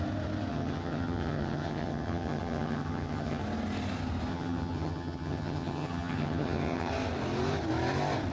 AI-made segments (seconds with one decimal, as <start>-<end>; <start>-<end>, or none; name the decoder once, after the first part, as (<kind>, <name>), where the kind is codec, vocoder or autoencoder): 0.5-3.4 (vocoder, HiFi-GAN); 4.3-6.9